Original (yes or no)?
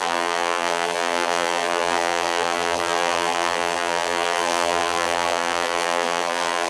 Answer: no